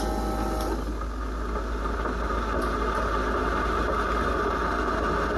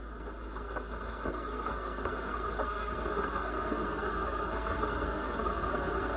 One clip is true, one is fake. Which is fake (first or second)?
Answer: second